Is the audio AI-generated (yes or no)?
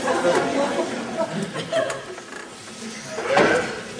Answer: no